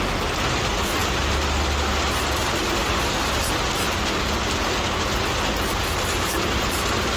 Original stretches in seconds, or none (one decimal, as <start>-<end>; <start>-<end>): 0.0-7.2